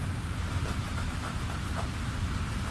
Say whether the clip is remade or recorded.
recorded